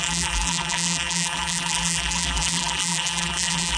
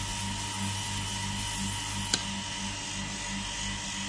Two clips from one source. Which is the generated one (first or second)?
first